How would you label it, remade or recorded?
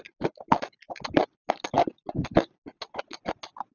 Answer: recorded